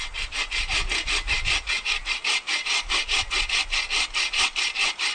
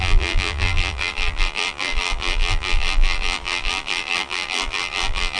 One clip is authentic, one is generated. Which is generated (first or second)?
second